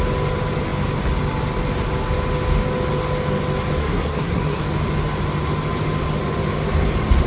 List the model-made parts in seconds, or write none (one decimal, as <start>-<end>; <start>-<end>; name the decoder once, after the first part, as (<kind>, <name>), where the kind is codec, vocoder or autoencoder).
3.8-4.6 (codec, SNAC)